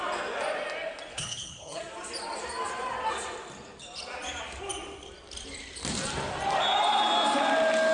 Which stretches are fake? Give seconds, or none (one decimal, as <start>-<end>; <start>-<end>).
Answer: 1.1-1.8